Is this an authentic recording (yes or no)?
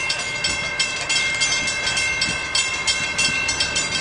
yes